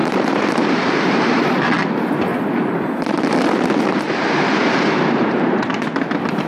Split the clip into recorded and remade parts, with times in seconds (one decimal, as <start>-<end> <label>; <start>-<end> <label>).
0.0-1.5 remade; 1.5-2.3 recorded; 2.3-5.6 remade; 5.6-6.5 recorded